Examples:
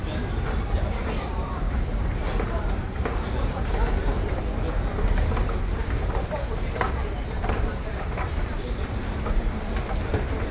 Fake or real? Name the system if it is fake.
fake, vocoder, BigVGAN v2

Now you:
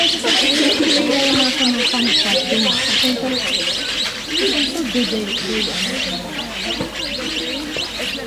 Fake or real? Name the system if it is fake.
real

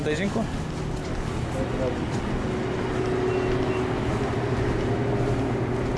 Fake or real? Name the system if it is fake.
real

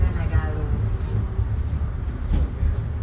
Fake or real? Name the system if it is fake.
real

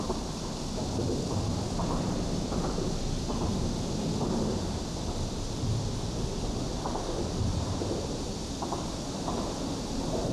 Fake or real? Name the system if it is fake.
real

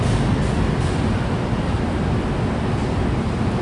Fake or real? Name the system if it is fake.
real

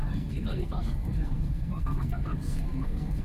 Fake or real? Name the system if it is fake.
fake, codec, SNAC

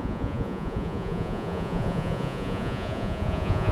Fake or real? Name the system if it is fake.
fake, vocoder, Vocos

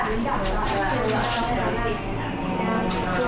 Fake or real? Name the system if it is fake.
real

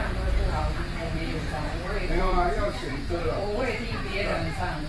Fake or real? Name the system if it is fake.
fake, vocoder, BigVGAN v2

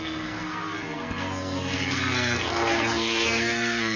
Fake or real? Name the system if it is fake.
fake, codec, SNAC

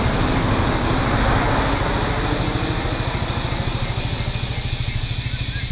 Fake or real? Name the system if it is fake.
real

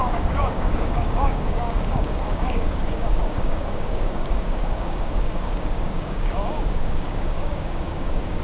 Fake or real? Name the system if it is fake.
fake, codec, DAC